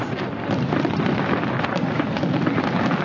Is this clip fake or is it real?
fake